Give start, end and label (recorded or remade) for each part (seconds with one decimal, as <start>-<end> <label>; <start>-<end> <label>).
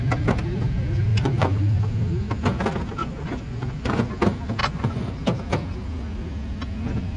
0.0-1.1 recorded; 1.1-1.8 remade; 1.8-3.0 recorded; 3.0-4.1 remade; 4.1-4.6 recorded; 4.6-5.1 remade; 5.1-7.2 recorded